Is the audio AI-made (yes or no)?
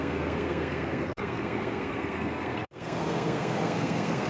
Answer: yes